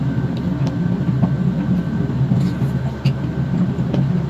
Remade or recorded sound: recorded